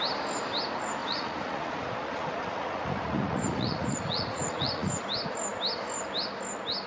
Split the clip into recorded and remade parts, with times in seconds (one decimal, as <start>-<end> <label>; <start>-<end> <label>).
0.0-1.0 recorded; 1.0-4.9 remade; 4.9-6.9 recorded